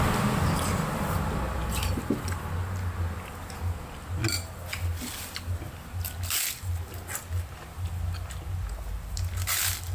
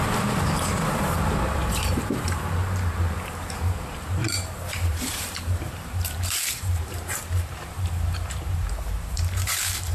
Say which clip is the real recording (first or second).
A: first